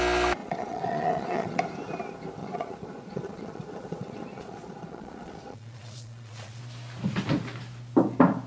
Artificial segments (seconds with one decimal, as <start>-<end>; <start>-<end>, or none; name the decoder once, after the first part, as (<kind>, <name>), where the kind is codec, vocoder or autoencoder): 0.4-1.6 (vocoder, Vocos); 2.4-6.6